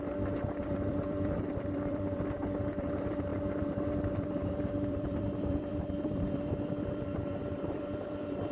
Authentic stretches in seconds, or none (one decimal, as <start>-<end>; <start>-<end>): none